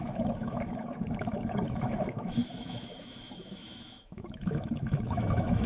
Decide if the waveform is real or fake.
fake